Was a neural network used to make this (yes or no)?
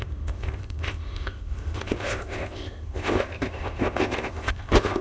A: yes